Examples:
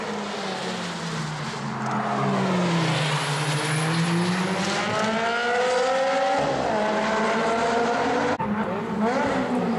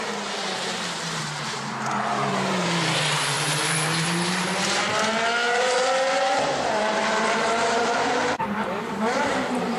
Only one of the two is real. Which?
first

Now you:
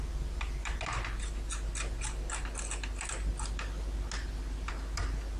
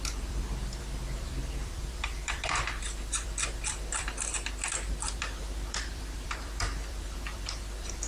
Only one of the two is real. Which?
first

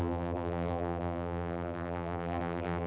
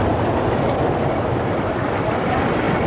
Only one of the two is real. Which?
second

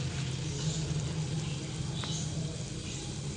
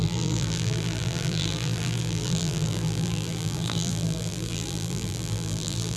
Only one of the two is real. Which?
first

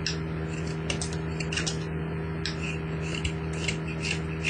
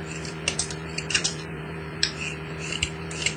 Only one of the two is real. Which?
first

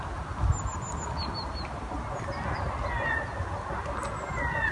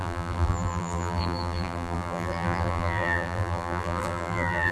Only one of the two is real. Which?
first